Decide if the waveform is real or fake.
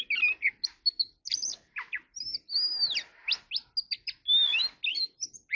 real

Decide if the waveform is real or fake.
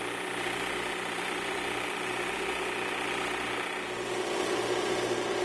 real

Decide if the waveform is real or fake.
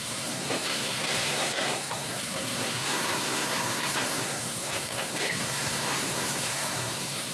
fake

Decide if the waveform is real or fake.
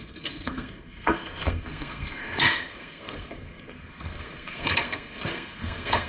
fake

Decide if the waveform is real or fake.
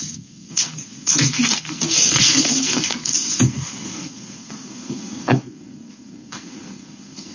fake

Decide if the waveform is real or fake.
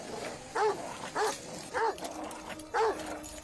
real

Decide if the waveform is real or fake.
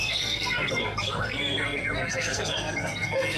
fake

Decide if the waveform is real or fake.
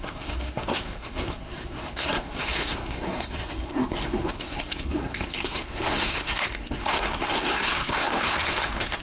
fake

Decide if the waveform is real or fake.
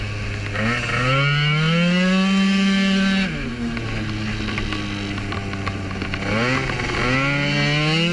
real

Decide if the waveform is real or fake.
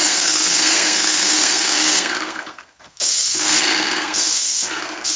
fake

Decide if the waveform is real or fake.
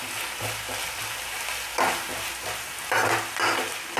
real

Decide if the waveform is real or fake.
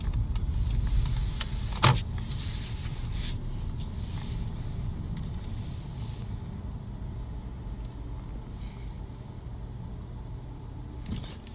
real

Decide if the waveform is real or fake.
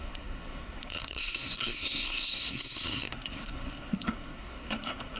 fake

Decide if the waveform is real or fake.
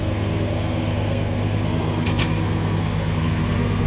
fake